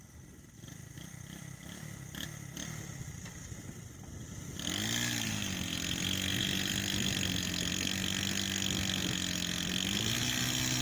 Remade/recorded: recorded